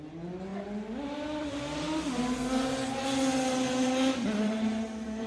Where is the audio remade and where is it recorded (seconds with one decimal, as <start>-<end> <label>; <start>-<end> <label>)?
0.0-4.1 recorded; 4.1-5.3 remade

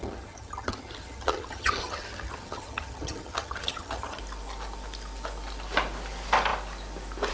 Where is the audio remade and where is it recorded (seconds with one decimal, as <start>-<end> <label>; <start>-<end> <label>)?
0.0-4.2 remade; 4.2-7.3 recorded

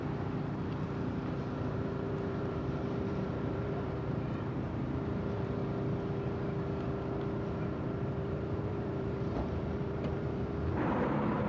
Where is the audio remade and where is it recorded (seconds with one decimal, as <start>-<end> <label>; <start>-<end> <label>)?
0.0-1.7 recorded; 1.7-5.6 remade; 5.6-7.6 recorded; 7.6-11.5 remade

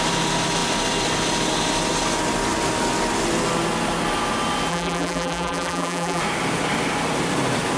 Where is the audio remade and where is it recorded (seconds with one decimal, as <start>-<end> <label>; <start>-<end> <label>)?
0.0-4.7 recorded; 4.7-6.2 remade; 6.2-7.8 recorded

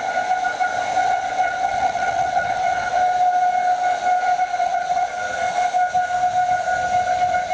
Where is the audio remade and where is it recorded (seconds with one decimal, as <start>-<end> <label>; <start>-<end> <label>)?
0.0-1.0 recorded; 1.0-3.0 remade; 3.0-4.5 recorded; 4.5-5.1 remade; 5.1-7.5 recorded

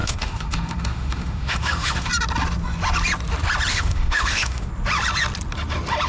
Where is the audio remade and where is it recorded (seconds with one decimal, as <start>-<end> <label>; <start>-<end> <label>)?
0.0-2.1 remade; 2.1-3.7 recorded; 3.7-4.7 remade; 4.7-6.1 recorded

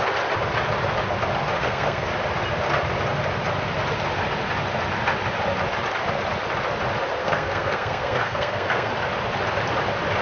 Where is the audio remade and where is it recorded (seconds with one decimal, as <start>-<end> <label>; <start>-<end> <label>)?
0.0-1.6 recorded; 1.6-2.1 remade; 2.1-7.2 recorded; 7.2-8.9 remade; 8.9-10.2 recorded